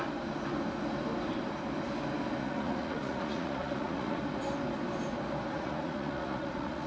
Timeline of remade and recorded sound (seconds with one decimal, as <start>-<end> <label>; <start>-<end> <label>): 0.0-2.4 recorded; 2.4-4.2 remade; 4.2-5.5 recorded; 5.5-6.9 remade